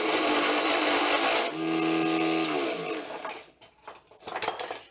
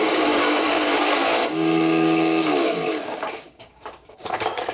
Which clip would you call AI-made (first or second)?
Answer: second